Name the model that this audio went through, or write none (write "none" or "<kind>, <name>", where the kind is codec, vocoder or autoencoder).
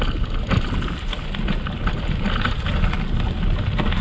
none